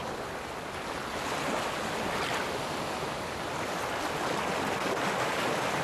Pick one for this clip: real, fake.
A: real